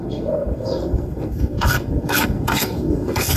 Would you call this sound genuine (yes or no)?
no